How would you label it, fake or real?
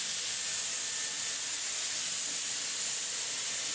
real